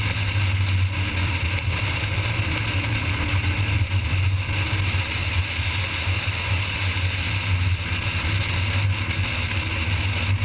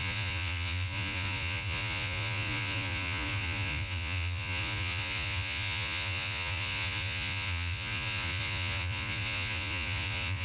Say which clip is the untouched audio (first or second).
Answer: first